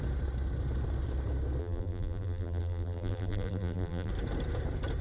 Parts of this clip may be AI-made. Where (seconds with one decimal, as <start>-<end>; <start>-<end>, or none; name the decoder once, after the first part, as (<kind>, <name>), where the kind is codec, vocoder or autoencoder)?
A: 1.6-4.1 (vocoder, BigVGAN v2)